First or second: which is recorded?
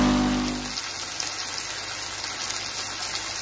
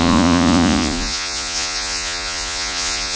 first